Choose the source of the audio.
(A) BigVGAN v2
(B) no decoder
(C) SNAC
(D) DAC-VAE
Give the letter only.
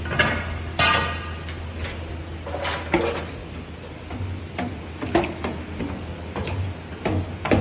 B